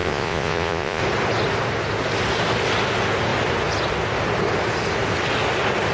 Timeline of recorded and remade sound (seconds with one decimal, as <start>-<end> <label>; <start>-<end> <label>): 0.0-1.0 remade; 1.0-5.9 recorded